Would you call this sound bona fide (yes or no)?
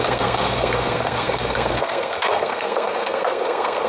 no